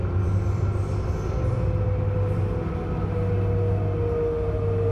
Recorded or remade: recorded